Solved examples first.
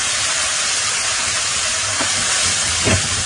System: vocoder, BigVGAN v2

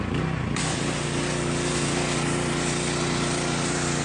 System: none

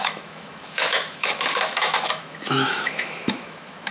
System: autoencoder, DAC-VAE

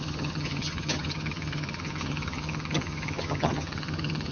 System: vocoder, HiFi-GAN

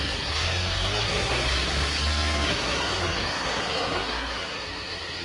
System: codec, SNAC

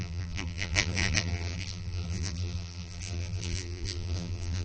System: vocoder, BigVGAN v2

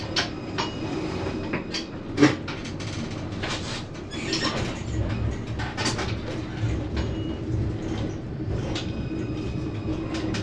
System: none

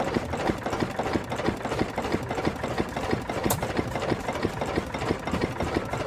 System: none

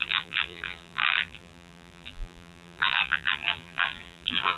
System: vocoder, BigVGAN v2